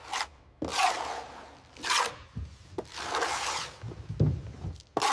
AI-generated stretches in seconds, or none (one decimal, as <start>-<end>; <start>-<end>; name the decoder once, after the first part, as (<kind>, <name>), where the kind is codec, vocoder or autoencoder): none